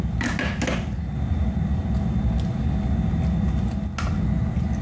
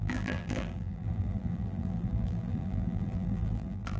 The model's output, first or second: second